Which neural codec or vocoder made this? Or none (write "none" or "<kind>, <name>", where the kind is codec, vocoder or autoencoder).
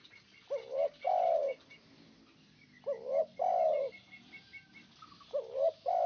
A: none